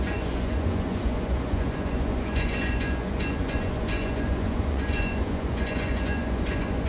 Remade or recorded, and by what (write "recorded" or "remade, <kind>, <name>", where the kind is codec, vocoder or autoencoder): remade, vocoder, Vocos